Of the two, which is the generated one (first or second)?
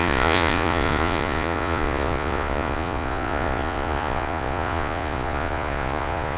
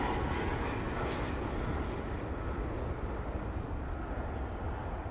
first